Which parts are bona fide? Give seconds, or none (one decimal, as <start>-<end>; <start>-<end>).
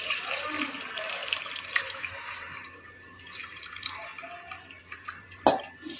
4.1-4.8